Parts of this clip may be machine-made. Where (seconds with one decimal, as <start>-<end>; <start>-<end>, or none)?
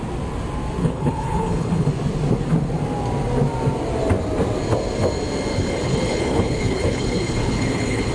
0.8-1.9; 5.5-8.1